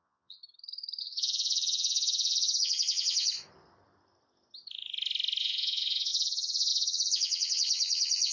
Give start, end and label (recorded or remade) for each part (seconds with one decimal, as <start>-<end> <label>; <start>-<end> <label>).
0.0-0.4 remade; 0.4-1.0 recorded; 1.0-3.3 remade; 3.3-5.4 recorded; 5.4-8.3 remade